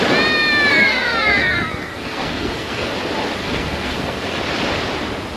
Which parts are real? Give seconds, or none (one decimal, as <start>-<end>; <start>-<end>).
0.0-0.7; 2.9-3.4; 4.4-5.4